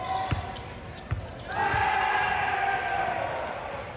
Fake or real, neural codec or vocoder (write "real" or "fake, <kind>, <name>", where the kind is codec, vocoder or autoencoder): real